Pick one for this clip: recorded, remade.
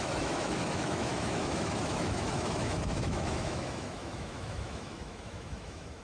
remade